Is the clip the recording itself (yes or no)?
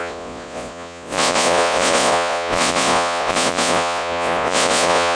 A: no